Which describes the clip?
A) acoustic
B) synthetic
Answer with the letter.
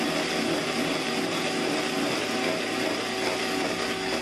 A